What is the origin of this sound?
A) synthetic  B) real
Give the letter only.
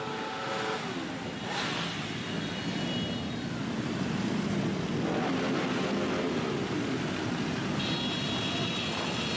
B